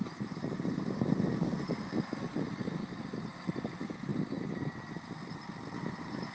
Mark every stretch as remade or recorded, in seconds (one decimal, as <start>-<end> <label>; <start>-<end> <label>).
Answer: 0.0-1.0 remade; 1.0-6.3 recorded